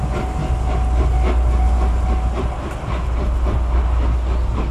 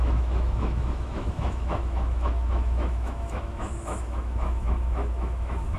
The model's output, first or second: second